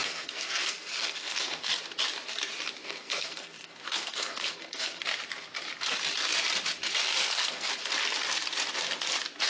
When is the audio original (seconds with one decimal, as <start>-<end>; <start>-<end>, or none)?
1.7-2.8; 5.0-7.2; 7.7-9.5